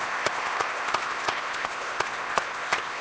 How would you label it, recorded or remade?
remade